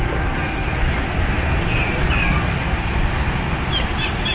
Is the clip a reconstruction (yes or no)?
no